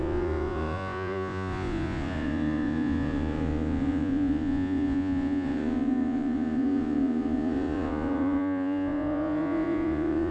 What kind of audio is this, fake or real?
fake